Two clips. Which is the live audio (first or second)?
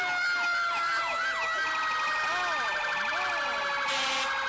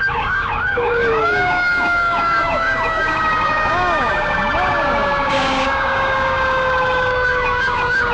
first